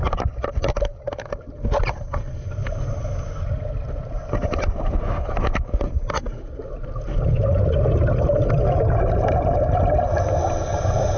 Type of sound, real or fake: real